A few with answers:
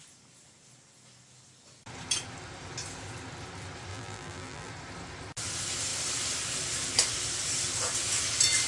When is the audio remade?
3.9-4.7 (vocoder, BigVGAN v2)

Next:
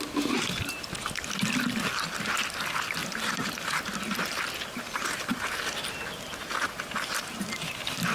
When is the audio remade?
3.0-3.8 (vocoder, BigVGAN v2)

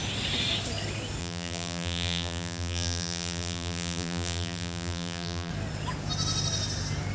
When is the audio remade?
1.2-5.5 (vocoder, BigVGAN v2)

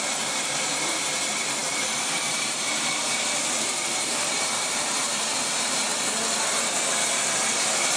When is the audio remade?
0.0-5.9 (vocoder, BigVGAN v2); 7.6-8.0

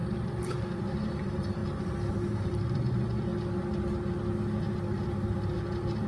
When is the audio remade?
0.0-1.6 (vocoder, BigVGAN v2); 2.1-3.3; 4.6-6.1

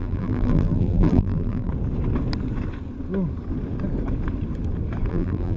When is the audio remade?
0.0-1.7 (vocoder, BigVGAN v2); 5.1-5.6

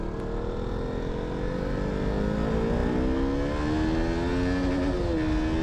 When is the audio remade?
none

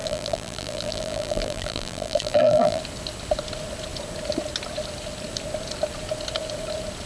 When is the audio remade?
0.0-2.8 (vocoder, BigVGAN v2)